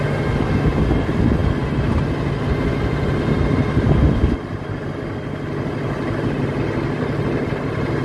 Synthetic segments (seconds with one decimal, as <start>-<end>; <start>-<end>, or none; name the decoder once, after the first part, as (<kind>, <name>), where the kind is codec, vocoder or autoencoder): none